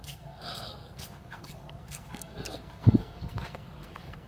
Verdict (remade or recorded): remade